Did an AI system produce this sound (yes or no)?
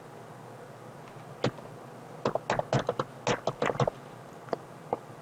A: no